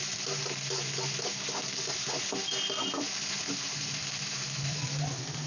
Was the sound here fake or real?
real